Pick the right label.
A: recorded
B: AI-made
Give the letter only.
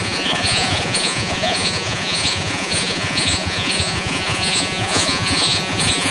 B